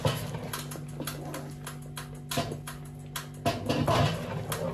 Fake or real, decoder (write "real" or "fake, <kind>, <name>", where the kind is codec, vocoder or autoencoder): real